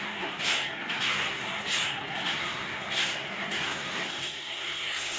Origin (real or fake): fake